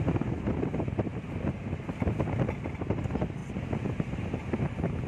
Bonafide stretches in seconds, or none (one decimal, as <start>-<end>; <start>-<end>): 0.0-5.1